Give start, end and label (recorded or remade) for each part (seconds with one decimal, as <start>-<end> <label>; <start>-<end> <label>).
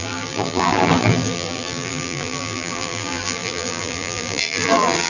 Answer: 0.0-5.1 remade